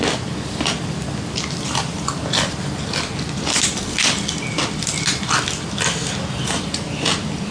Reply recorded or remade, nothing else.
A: recorded